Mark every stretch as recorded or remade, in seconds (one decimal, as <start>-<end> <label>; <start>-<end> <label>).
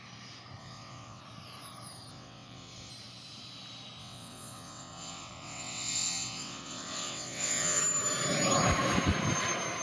0.0-0.6 recorded; 0.6-1.2 remade; 1.2-2.1 recorded; 2.1-2.9 remade; 2.9-4.0 recorded; 4.0-7.8 remade; 7.8-9.8 recorded